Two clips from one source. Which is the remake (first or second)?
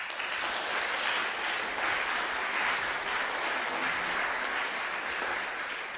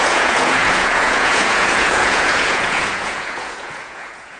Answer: second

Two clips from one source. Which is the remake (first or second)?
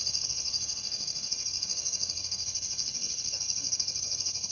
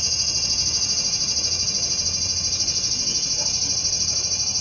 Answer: first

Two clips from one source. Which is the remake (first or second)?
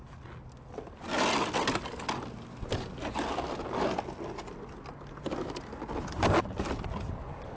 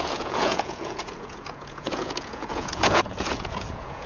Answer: second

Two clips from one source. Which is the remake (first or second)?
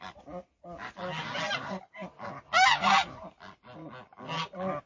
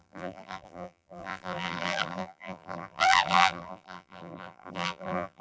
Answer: second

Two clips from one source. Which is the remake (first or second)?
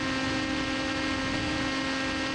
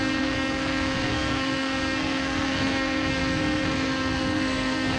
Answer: second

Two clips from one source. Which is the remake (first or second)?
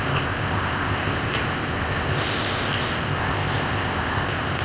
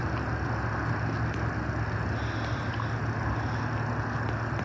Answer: first